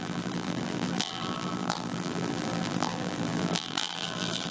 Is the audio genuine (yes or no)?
no